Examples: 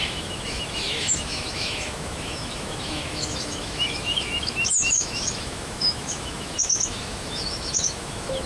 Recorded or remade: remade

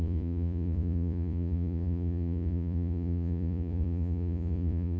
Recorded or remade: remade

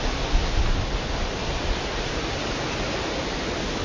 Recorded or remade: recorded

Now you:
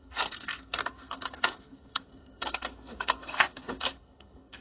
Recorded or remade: remade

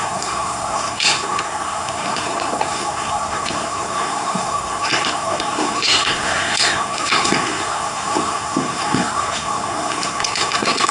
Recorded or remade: remade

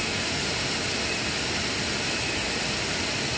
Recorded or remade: recorded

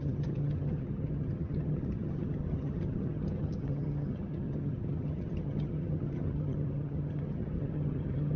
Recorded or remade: remade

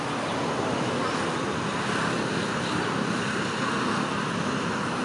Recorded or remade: recorded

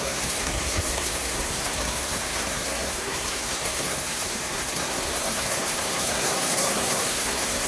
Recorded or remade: remade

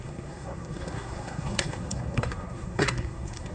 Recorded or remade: remade